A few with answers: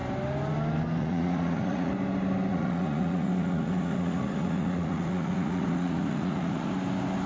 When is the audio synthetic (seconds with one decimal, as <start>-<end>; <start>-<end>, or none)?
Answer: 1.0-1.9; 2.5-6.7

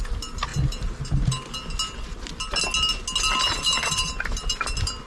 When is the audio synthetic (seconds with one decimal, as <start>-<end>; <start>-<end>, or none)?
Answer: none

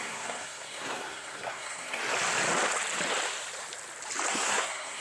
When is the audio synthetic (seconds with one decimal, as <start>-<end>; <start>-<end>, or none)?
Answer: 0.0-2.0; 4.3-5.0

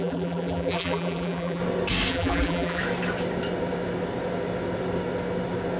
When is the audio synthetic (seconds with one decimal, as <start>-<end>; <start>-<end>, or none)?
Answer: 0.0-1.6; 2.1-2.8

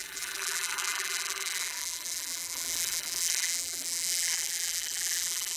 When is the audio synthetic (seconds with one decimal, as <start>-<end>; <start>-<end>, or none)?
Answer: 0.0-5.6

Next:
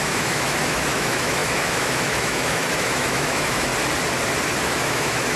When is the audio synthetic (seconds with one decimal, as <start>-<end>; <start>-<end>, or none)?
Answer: 0.0-3.7; 4.6-5.4

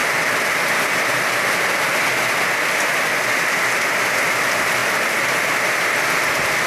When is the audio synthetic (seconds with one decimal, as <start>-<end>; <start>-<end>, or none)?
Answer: none